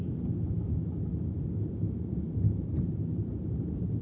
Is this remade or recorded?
remade